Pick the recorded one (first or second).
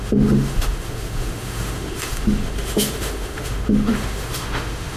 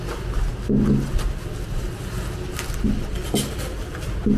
second